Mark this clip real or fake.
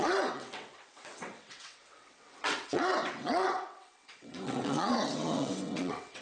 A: fake